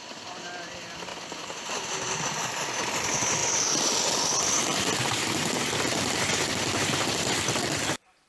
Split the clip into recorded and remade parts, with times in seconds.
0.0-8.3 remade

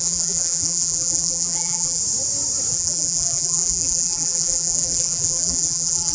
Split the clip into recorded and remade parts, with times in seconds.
0.0-2.0 remade; 2.0-2.7 recorded; 2.7-6.1 remade

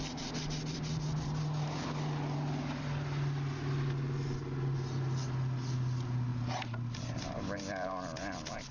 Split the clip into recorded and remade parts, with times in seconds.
0.0-6.3 recorded; 6.3-8.7 remade

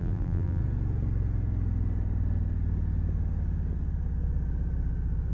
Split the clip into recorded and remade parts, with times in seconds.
0.0-0.6 remade; 0.6-5.3 recorded

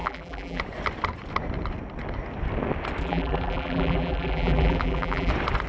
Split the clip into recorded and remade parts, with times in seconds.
0.0-0.6 remade; 0.6-3.0 recorded; 3.0-5.3 remade; 5.3-5.7 recorded